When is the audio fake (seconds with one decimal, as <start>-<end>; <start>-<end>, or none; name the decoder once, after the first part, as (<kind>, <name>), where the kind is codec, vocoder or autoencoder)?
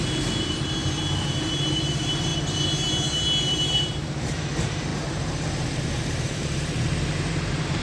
0.0-2.3 (vocoder, BigVGAN v2); 3.4-7.8